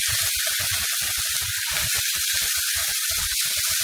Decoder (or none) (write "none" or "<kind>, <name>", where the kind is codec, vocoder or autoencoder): none